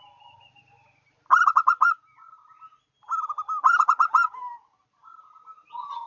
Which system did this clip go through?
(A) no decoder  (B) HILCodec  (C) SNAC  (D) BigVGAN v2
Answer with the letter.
A